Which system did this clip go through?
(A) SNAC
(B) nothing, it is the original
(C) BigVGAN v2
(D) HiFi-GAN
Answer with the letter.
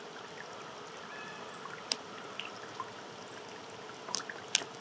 B